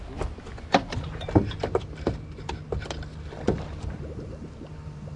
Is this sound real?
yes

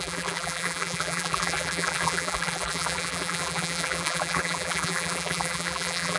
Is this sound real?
no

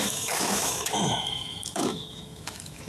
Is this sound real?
no